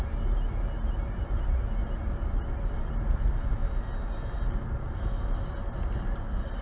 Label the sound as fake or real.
real